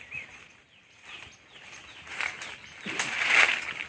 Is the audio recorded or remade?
recorded